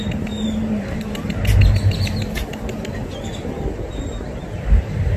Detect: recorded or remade recorded